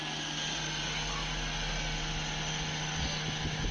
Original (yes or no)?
yes